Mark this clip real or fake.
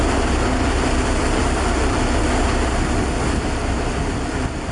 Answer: real